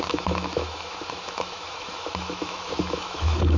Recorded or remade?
remade